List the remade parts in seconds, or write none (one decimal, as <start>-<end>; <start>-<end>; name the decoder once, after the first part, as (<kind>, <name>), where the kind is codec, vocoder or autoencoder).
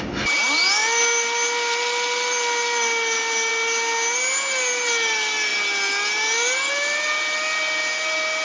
none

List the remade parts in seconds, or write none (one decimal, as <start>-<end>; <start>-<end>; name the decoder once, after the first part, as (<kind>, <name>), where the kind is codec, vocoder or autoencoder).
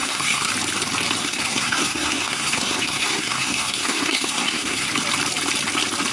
0.0-0.5 (codec, SNAC); 1.2-4.9